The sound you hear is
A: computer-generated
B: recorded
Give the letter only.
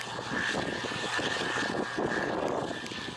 B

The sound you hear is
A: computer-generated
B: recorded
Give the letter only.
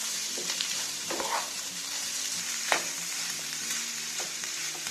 A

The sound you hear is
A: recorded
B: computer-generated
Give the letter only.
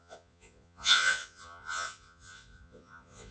B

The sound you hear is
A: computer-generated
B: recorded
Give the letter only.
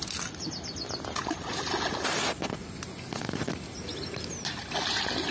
B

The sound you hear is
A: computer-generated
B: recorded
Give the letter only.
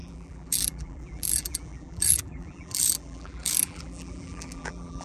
A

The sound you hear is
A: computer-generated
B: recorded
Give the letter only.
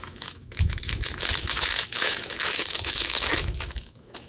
A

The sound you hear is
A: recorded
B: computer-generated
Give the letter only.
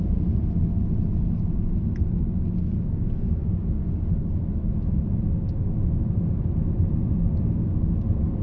A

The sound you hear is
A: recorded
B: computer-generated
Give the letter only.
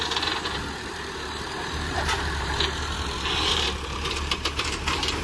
B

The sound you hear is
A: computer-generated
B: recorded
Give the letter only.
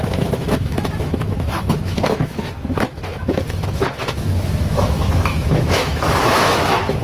A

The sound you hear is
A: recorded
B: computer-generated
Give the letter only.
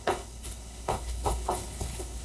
B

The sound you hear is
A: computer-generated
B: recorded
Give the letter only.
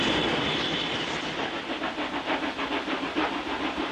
B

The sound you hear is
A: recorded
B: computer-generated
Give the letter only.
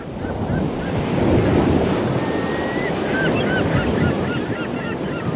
A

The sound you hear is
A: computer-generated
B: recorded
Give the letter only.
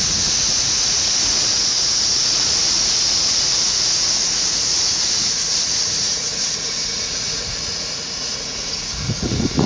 A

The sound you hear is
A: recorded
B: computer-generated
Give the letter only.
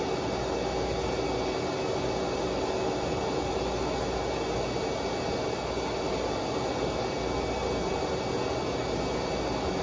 A